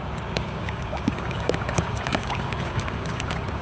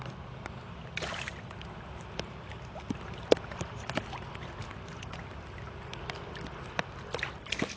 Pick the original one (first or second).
second